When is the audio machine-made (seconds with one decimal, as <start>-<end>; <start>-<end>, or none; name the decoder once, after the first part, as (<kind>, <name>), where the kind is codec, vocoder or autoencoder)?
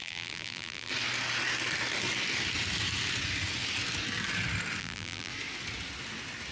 0.0-0.9 (vocoder, BigVGAN v2); 4.8-5.3